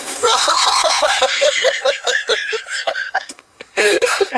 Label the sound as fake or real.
fake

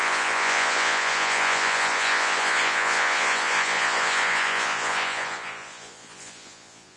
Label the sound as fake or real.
fake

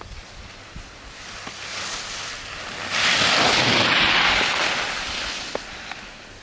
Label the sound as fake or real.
real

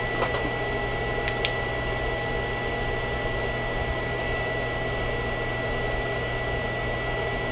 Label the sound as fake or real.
real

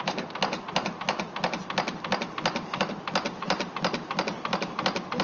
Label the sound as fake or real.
real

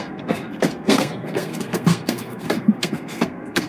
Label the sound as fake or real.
fake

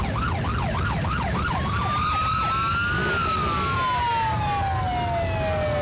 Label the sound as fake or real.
real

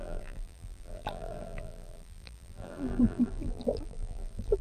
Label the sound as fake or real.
fake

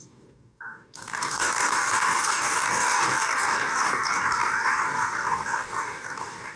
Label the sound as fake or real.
fake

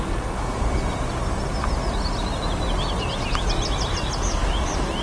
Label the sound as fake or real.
real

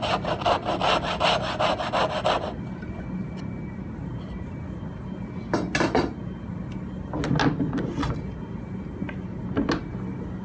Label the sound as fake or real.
real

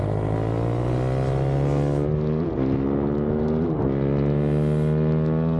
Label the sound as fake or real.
real